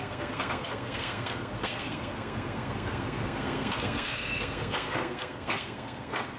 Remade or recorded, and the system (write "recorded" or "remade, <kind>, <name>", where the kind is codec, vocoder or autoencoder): remade, codec, SNAC